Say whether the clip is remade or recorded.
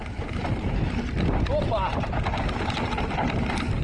recorded